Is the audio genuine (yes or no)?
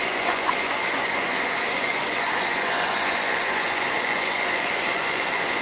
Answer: no